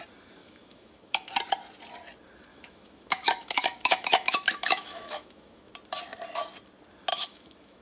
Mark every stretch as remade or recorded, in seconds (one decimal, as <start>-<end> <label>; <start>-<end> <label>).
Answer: 0.0-0.4 recorded; 0.4-1.3 remade; 1.3-2.5 recorded; 2.5-5.7 remade; 5.7-7.1 recorded; 7.1-7.8 remade